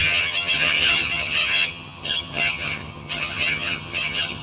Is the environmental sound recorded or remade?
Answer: remade